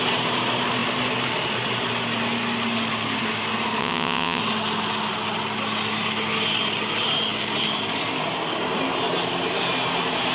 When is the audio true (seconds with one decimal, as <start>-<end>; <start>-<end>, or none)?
0.0-3.8; 4.4-10.3